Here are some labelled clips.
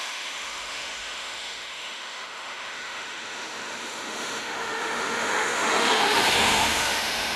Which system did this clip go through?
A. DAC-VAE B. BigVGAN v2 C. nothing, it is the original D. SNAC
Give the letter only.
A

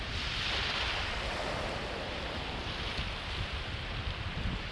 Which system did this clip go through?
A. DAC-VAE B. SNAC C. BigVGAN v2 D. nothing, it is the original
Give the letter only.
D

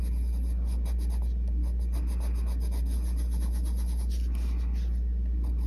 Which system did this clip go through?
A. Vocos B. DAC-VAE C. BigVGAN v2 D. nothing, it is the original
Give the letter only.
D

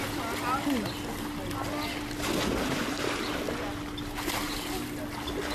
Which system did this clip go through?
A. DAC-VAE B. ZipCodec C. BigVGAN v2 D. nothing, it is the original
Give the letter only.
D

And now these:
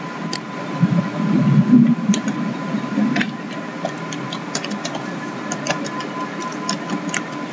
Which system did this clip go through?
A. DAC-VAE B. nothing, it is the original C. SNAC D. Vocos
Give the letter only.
B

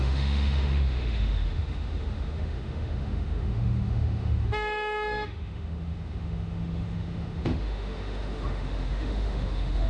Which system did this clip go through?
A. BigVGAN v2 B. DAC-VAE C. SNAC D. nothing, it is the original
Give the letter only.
B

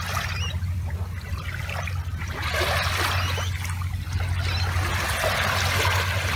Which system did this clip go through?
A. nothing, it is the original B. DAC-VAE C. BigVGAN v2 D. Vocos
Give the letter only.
A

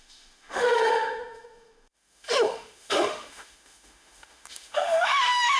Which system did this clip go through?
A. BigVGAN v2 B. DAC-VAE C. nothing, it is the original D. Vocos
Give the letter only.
B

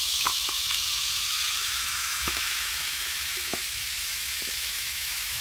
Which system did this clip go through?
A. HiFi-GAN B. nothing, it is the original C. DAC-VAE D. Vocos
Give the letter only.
C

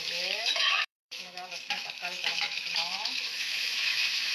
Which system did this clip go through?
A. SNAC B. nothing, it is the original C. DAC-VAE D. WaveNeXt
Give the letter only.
C